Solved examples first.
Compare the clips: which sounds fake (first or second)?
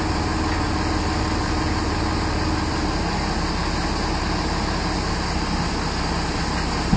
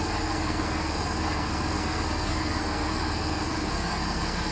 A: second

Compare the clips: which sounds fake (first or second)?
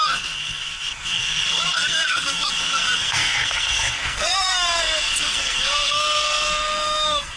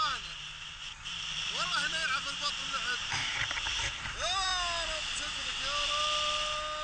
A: first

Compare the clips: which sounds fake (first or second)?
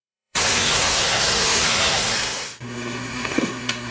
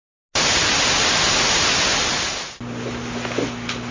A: first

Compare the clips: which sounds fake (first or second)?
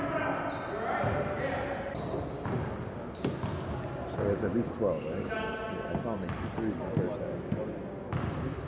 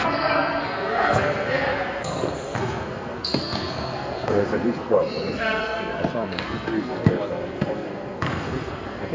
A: second